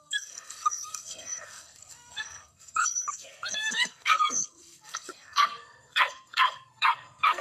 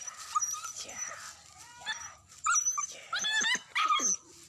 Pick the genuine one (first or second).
second